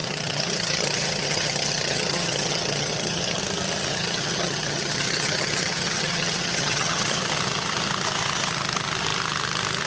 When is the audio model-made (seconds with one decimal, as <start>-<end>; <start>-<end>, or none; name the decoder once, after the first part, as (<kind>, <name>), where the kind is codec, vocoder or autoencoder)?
0.0-3.4 (vocoder, HiFi-GAN); 3.9-7.2